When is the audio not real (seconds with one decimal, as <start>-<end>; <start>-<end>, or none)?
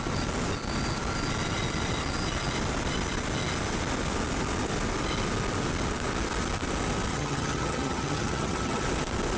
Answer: 7.1-8.8